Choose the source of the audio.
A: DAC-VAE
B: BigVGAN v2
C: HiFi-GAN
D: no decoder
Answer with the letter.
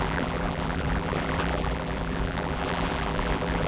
B